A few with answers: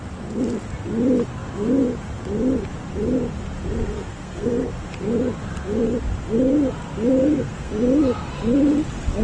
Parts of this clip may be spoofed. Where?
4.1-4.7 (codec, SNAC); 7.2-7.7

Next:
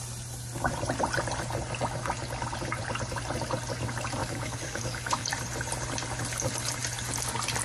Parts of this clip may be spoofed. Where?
4.2-5.3 (codec, DAC)

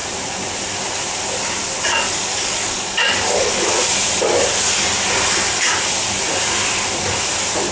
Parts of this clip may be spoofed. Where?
2.1-3.7 (codec, DAC)

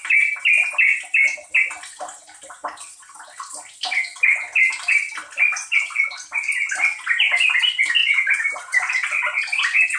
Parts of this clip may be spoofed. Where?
8.0-8.9 (vocoder, BigVGAN v2)

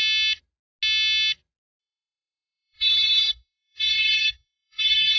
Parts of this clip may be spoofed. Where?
1.8-5.2 (codec, DAC)

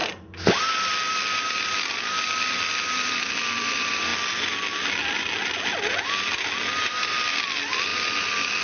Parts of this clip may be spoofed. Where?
none